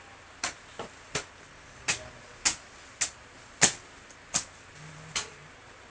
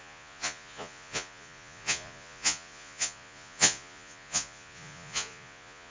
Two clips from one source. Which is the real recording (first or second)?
first